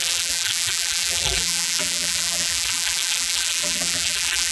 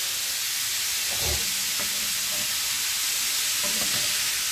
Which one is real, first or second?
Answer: second